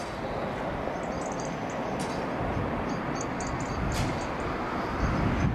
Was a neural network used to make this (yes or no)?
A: no